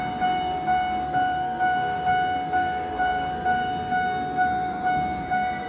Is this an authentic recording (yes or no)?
no